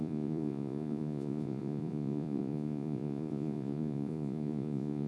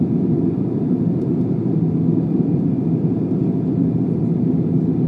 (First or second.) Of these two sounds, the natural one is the second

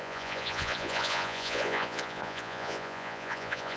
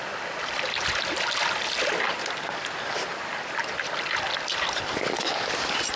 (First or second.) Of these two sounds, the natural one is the second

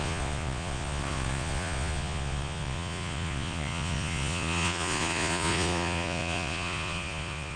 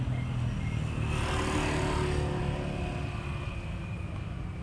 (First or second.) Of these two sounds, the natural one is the second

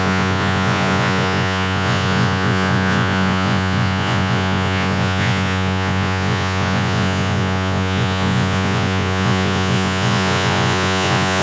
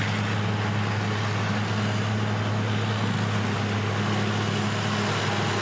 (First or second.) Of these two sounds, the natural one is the second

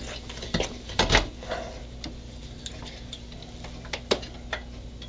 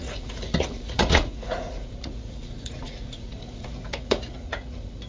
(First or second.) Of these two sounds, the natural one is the first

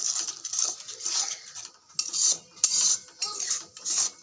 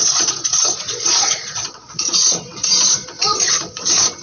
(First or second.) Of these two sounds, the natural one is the first